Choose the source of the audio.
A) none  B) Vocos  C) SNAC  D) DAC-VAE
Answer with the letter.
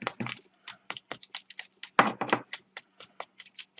A